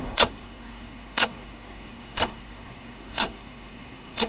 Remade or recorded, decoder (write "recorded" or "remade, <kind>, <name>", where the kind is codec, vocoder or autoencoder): remade, codec, SNAC